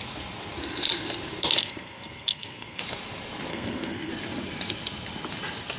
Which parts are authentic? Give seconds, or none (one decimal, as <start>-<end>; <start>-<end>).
0.0-1.6; 2.8-3.5; 4.1-5.8